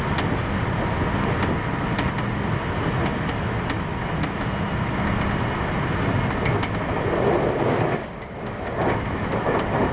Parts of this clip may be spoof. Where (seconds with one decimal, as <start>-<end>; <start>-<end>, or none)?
none